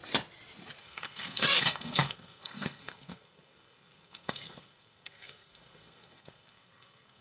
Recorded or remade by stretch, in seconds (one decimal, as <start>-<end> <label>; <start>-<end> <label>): 0.0-0.8 recorded; 0.8-7.2 remade